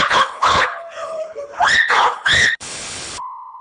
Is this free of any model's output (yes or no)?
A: no